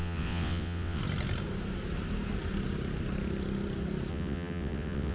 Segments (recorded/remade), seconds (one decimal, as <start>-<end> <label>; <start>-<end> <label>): 0.0-1.0 remade; 1.0-4.1 recorded; 4.1-5.1 remade